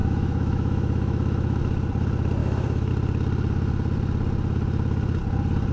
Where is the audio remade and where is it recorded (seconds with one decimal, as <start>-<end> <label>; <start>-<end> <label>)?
0.0-1.6 remade; 1.6-2.4 recorded; 2.4-2.9 remade; 2.9-5.7 recorded

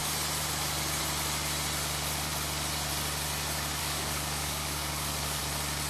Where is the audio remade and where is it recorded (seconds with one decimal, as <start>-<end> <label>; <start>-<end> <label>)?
0.0-3.8 recorded; 3.8-5.4 remade; 5.4-5.9 recorded

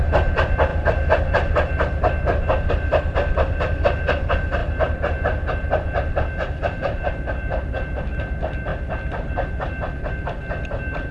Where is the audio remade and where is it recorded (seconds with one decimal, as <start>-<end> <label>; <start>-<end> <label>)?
0.0-11.1 recorded

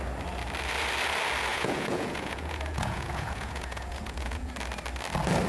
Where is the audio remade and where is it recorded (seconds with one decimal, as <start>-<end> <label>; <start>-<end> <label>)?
0.0-1.5 recorded; 1.5-4.5 remade; 4.5-5.5 recorded

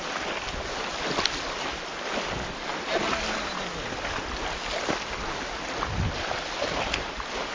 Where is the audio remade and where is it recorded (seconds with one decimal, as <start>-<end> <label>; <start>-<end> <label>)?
0.0-7.5 recorded

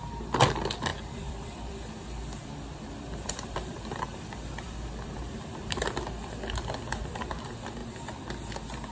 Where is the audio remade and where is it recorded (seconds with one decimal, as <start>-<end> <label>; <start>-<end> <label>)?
0.0-0.9 recorded; 0.9-6.0 remade; 6.0-8.9 recorded

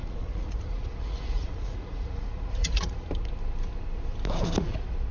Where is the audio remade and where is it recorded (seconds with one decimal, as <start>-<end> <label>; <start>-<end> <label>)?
0.0-3.1 remade; 3.1-5.1 recorded

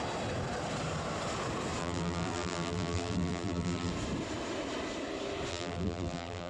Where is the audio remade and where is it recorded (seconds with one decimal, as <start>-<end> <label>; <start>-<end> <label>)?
0.0-1.8 recorded; 1.8-3.9 remade; 3.9-5.5 recorded; 5.5-6.5 remade